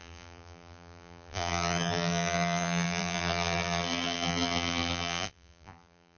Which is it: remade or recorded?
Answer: remade